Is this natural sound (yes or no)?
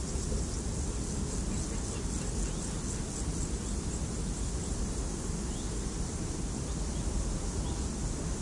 yes